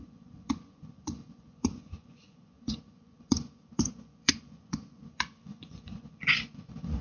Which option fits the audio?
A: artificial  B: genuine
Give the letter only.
A